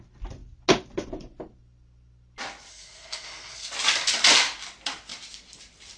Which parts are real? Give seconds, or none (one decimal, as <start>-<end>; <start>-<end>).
0.0-2.7; 3.7-6.0